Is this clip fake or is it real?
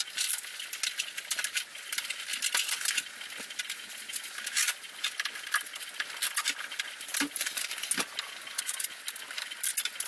real